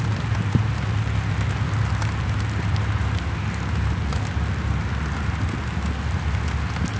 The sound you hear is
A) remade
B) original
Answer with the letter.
B